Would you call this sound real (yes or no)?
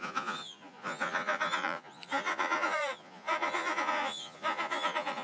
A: no